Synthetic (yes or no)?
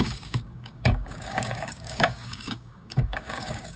yes